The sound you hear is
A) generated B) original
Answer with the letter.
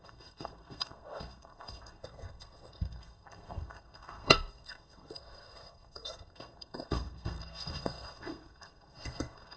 A